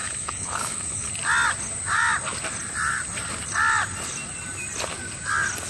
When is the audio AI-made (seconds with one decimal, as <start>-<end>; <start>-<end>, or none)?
0.0-1.1